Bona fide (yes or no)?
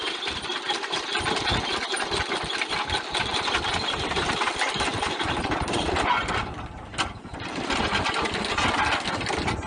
yes